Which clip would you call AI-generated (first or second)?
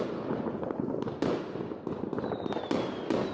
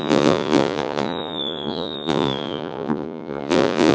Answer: second